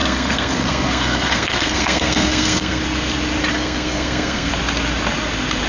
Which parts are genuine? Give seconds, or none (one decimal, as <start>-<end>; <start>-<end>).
2.8-3.5; 4.5-5.7